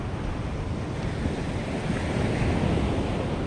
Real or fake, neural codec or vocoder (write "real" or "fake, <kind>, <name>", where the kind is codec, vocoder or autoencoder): real